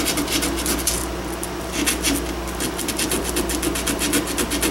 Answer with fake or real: real